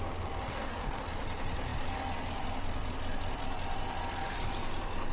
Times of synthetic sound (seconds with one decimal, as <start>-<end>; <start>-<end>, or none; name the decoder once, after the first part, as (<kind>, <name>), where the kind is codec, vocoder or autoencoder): 0.5-1.0 (codec, SNAC)